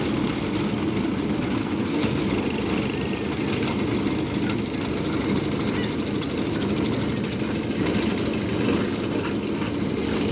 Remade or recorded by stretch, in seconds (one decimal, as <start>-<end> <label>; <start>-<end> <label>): 0.0-1.6 recorded; 1.6-2.2 remade; 2.2-10.3 recorded

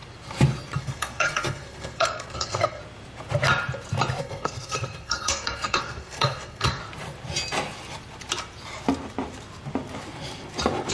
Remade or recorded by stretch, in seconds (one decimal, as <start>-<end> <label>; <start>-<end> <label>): 0.0-0.8 recorded; 0.8-2.8 remade; 2.8-4.2 recorded; 4.2-6.8 remade; 6.8-10.9 recorded

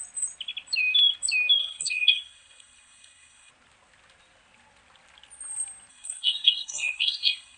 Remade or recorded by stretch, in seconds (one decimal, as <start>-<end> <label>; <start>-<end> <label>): 0.0-1.6 recorded; 1.6-3.5 remade; 3.5-5.9 recorded; 5.9-7.6 remade

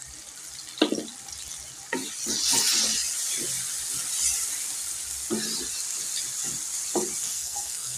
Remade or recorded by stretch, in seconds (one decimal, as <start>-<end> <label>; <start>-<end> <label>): 0.0-7.2 recorded; 7.2-8.0 remade